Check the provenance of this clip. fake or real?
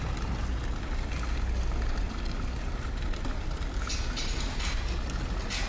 real